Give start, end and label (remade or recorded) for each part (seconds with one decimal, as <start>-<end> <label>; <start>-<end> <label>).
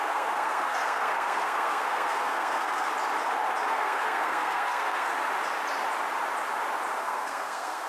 0.0-2.9 remade; 2.9-3.7 recorded; 3.7-5.1 remade; 5.1-7.0 recorded; 7.0-7.9 remade